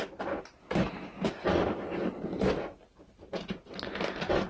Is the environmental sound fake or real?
real